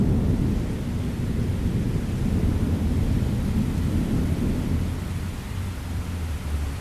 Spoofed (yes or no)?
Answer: no